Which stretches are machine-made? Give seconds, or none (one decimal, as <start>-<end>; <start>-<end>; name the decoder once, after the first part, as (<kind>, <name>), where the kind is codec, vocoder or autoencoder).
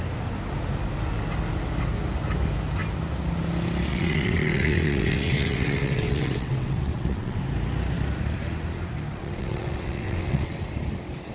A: 3.9-7.4 (vocoder, WaveNeXt); 9.1-10.5